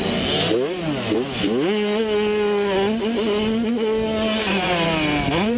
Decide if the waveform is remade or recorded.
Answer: recorded